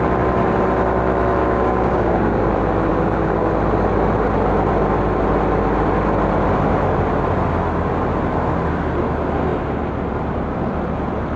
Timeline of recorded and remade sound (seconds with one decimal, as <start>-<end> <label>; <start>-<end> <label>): 0.0-1.4 recorded; 1.4-2.4 remade; 2.4-2.9 recorded; 2.9-3.5 remade; 3.5-11.4 recorded